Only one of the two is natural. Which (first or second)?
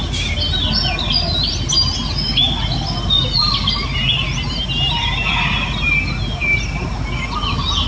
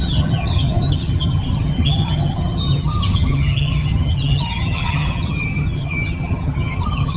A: first